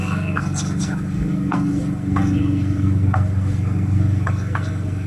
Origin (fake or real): fake